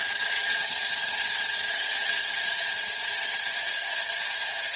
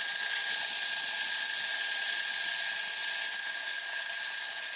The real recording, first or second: second